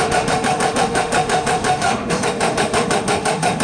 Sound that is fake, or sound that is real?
fake